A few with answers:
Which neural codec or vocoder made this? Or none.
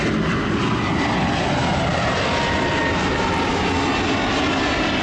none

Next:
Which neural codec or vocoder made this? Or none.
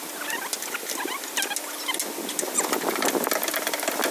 none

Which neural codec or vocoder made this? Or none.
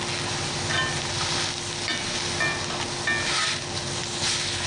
none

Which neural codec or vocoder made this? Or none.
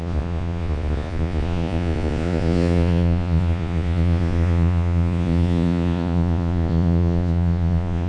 vocoder, Vocos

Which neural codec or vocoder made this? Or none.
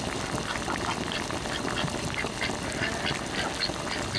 none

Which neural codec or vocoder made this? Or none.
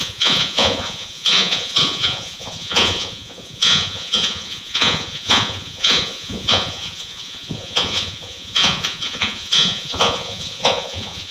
vocoder, Vocos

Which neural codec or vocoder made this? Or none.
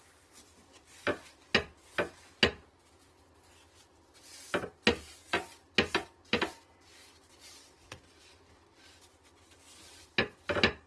none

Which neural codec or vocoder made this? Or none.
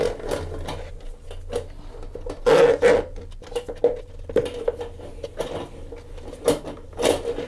none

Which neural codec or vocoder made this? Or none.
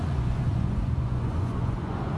vocoder, Vocos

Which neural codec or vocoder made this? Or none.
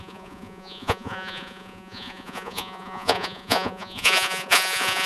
vocoder, Vocos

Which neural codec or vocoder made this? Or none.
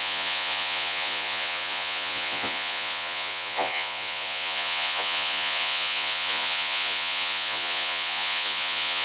vocoder, Vocos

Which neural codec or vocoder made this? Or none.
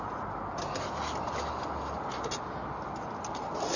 none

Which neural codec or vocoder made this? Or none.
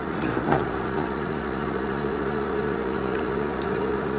vocoder, Vocos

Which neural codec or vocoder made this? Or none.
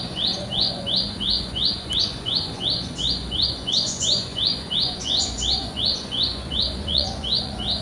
vocoder, Vocos